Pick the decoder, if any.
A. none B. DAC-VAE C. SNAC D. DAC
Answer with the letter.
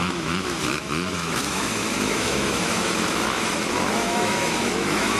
B